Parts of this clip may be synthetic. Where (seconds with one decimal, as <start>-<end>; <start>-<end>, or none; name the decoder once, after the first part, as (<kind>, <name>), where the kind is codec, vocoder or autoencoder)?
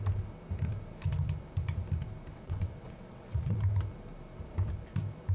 2.3-3.6 (vocoder, WaveNeXt)